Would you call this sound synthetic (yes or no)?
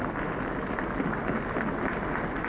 no